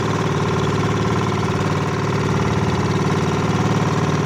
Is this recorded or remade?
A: remade